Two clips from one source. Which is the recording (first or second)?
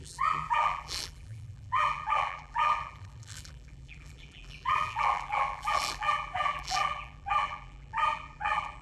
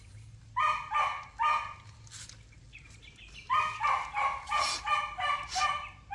second